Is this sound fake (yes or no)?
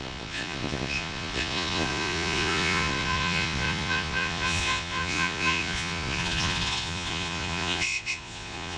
yes